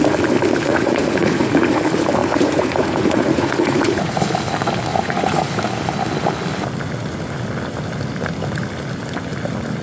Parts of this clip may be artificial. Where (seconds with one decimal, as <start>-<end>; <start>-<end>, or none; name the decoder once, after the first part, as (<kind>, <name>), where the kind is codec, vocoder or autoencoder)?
0.7-1.8 (vocoder, Vocos); 2.2-4.2; 4.9-5.6